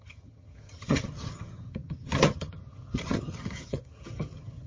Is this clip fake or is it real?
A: fake